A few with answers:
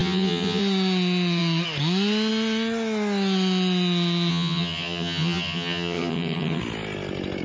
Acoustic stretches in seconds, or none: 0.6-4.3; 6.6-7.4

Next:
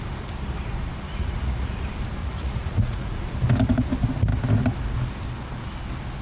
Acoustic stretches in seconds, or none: 0.0-1.1; 1.8-2.2; 3.2-6.2

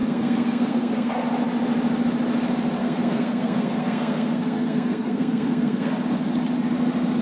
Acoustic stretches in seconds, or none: 1.1-2.8; 5.9-7.2

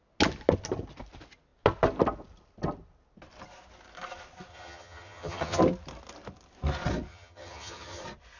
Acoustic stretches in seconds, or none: 0.0-4.5; 5.6-7.1; 8.0-8.4

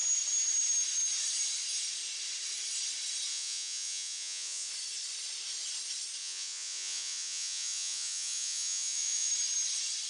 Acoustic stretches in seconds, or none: 0.0-3.3; 4.7-6.2; 9.3-10.1